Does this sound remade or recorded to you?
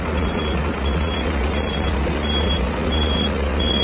remade